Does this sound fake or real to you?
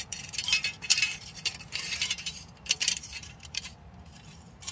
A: fake